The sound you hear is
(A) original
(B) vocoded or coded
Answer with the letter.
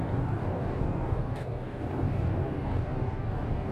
B